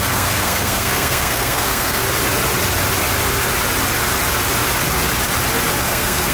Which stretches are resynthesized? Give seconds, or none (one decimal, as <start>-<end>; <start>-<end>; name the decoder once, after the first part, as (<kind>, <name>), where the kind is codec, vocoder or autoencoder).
0.0-2.0 (codec, SNAC); 5.8-6.3